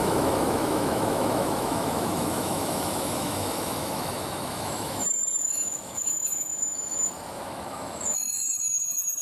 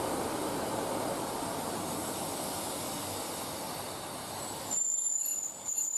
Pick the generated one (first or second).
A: first